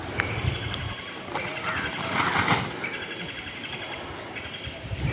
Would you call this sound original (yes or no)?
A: yes